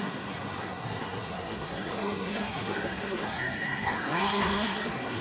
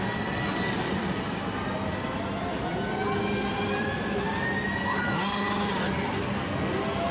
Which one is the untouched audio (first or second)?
second